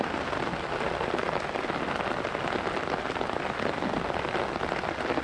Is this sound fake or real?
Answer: real